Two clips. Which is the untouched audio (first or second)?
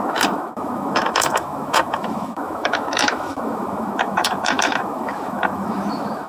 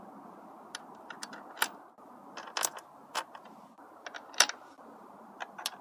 second